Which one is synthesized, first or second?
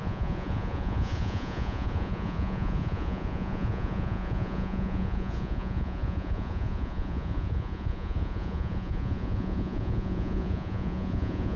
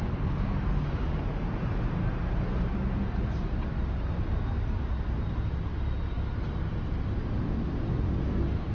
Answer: first